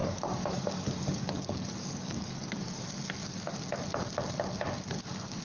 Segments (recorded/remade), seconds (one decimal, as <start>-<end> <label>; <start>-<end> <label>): 0.0-2.8 remade; 2.8-5.4 recorded